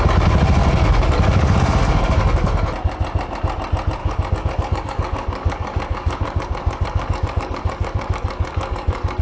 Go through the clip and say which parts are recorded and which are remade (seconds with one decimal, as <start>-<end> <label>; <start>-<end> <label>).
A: 0.0-0.6 recorded; 0.6-2.6 remade; 2.6-4.0 recorded; 4.0-9.2 remade